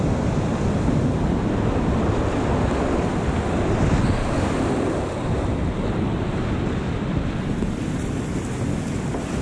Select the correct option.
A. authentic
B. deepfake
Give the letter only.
A